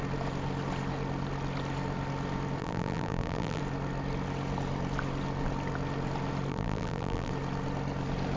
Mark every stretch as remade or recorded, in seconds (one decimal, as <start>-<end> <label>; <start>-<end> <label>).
0.0-2.6 recorded; 2.6-3.6 remade; 3.6-6.5 recorded; 6.5-7.3 remade; 7.3-8.4 recorded